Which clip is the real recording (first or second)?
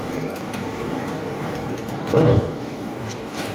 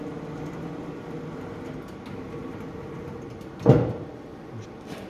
second